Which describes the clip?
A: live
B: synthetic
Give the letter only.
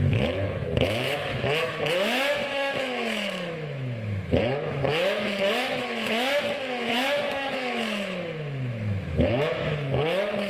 B